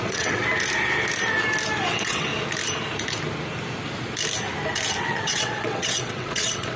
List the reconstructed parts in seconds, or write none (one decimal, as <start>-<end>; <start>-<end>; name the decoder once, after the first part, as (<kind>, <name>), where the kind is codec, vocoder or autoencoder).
0.0-0.4 (vocoder, WaveNeXt); 1.9-2.3; 5.0-6.8